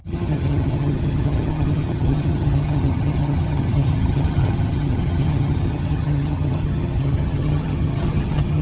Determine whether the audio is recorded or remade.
remade